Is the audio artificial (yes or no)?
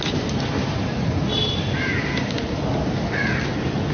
no